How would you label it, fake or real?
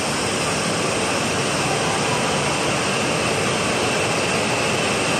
real